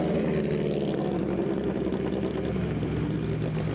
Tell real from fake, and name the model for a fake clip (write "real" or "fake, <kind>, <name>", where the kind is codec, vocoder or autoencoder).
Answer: real